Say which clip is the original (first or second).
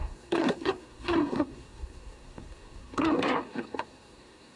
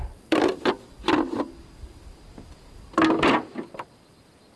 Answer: second